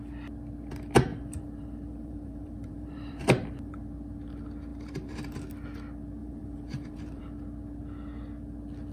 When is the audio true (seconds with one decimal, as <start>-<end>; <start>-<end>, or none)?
0.0-1.1; 3.8-4.7; 5.4-6.2; 7.2-8.9